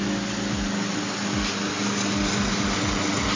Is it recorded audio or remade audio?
recorded